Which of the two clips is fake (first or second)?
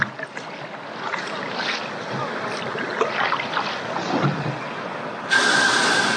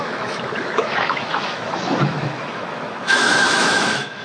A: second